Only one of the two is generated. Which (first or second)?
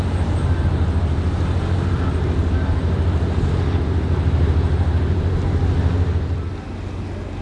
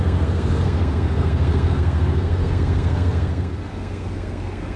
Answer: second